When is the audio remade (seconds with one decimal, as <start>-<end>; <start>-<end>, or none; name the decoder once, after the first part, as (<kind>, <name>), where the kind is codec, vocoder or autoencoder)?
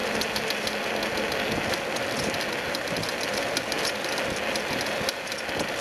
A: none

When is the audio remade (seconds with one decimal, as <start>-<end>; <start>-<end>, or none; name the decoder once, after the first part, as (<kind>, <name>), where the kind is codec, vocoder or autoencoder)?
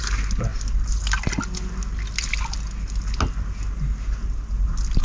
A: none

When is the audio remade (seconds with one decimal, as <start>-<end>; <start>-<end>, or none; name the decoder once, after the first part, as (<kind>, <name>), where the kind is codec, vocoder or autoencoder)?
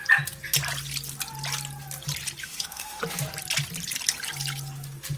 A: 2.4-3.0 (autoencoder, DAC-VAE)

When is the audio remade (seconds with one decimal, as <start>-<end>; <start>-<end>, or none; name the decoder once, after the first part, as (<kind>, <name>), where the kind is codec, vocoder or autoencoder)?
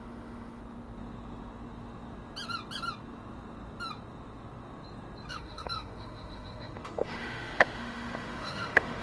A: 0.0-0.6 (autoencoder, DAC-VAE); 5.3-9.0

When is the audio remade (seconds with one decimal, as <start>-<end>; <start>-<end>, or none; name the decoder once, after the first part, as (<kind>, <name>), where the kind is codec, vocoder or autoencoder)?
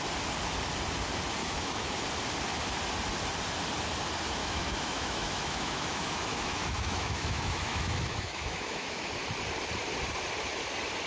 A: 1.4-2.0 (autoencoder, DAC-VAE); 4.4-9.1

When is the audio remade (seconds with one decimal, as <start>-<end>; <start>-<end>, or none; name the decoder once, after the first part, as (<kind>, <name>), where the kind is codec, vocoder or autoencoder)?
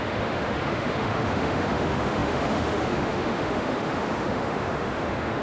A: 0.0-5.4 (autoencoder, DAC-VAE)